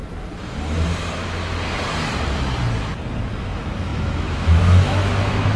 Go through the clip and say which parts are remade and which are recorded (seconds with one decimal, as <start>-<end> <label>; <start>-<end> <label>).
0.0-3.3 recorded; 3.3-5.6 remade